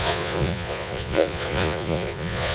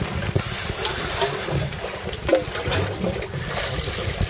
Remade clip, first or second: first